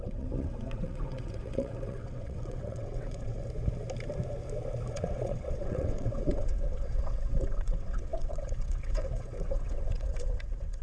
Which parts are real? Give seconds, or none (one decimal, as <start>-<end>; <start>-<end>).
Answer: 3.4-4.9